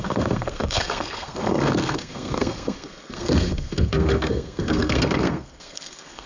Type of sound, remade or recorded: remade